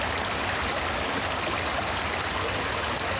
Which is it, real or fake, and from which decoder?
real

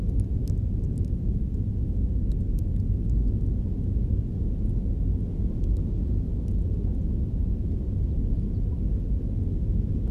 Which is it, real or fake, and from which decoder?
real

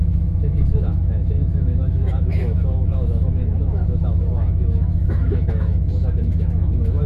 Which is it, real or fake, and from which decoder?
fake, autoencoder, DAC-VAE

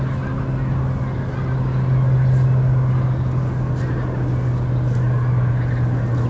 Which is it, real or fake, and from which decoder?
real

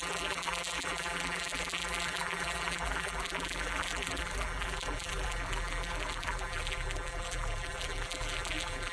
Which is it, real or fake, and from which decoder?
fake, vocoder, BigVGAN v2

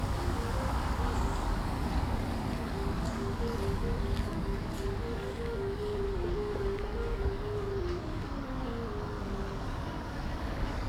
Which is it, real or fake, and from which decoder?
fake, codec, DAC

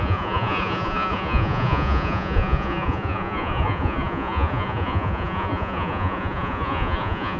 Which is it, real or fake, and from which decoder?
fake, vocoder, Vocos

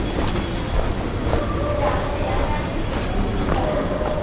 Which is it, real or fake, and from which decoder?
real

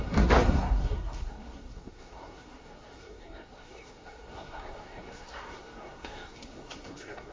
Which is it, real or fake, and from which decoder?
fake, codec, SNAC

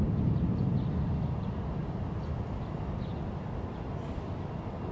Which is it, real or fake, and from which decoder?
real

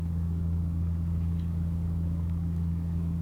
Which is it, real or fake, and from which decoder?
fake, codec, DAC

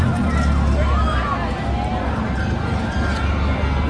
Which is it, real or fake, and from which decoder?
real